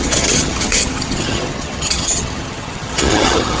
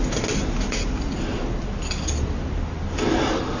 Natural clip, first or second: second